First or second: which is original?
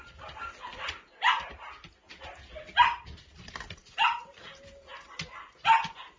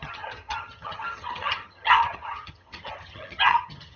first